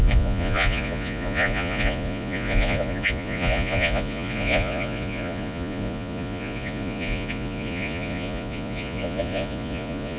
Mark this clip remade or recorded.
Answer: remade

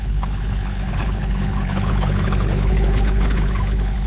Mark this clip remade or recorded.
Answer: remade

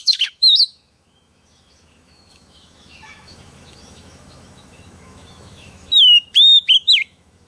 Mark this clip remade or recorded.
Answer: remade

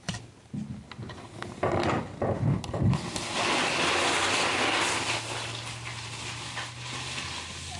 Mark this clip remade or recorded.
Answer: recorded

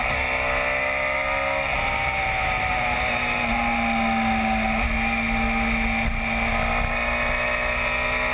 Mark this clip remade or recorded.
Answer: recorded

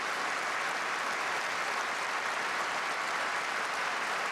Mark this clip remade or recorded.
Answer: recorded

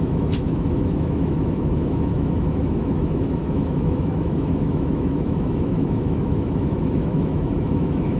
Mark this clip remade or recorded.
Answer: remade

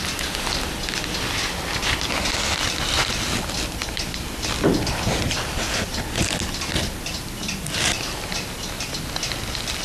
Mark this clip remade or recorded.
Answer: recorded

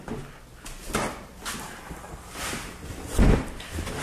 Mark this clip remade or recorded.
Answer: recorded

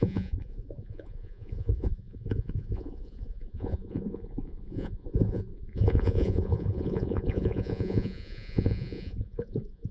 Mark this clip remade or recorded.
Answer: remade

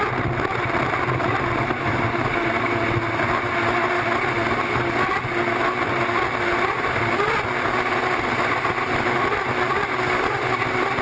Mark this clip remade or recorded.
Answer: recorded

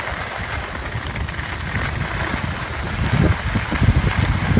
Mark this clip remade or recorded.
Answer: recorded